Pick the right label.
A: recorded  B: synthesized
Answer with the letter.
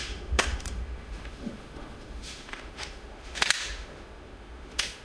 B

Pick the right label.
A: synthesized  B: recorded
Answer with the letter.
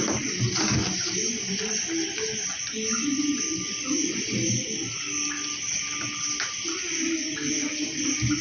B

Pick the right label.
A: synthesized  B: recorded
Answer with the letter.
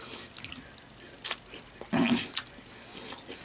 B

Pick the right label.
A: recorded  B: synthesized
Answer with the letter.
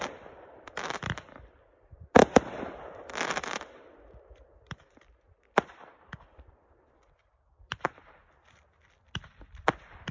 B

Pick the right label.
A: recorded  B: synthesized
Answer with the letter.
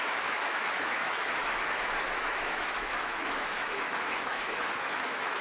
B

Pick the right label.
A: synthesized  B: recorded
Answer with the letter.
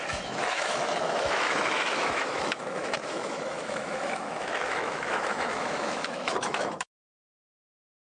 A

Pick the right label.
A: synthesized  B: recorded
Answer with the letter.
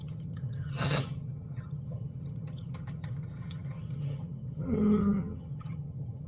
A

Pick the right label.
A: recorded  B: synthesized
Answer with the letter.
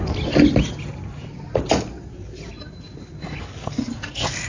A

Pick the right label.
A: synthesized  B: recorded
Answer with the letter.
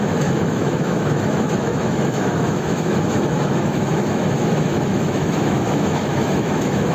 A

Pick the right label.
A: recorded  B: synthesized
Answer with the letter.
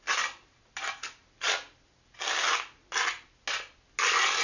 A